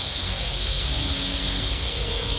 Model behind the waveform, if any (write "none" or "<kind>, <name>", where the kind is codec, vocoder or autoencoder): codec, SNAC